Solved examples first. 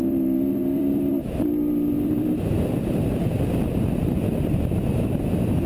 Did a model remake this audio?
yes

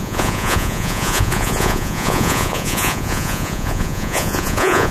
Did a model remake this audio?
yes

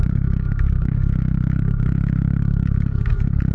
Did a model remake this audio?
yes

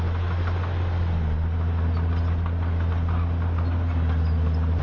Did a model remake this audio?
no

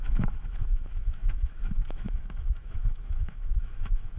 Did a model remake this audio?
yes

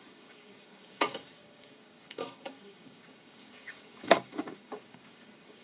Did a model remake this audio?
yes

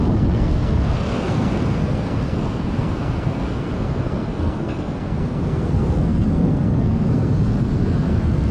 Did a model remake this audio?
yes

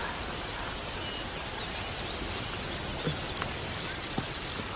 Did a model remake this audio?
no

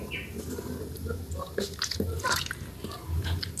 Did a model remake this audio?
no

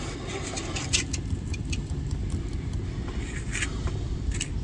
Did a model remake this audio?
no